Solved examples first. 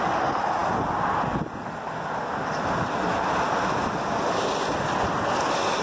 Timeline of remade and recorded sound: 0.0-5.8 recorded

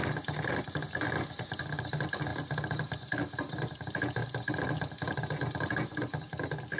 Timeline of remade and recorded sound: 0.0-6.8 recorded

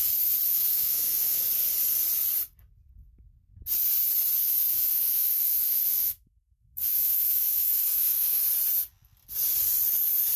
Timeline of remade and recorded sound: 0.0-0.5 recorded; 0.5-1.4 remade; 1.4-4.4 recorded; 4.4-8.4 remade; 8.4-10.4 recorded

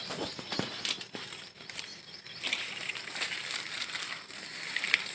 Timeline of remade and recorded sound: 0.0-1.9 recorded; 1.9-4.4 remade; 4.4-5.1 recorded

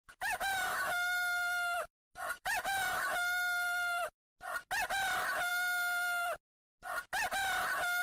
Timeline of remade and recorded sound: 0.0-4.2 remade; 4.2-8.0 recorded

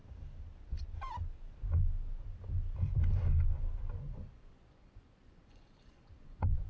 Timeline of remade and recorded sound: 0.0-4.0 recorded; 4.0-6.7 remade

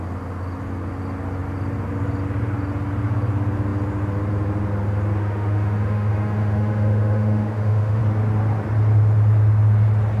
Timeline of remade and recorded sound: 0.0-5.2 recorded; 5.2-8.0 remade; 8.0-10.2 recorded

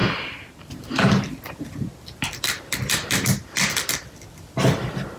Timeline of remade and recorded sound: 0.0-0.7 remade; 0.7-5.2 recorded